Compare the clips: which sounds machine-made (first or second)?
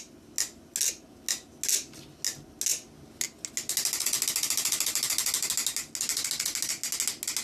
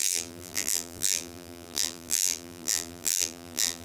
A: second